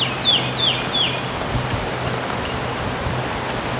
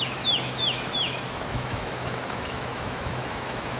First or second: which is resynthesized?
second